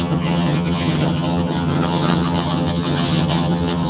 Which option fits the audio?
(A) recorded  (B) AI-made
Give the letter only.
B